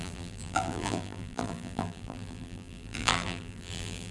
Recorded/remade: remade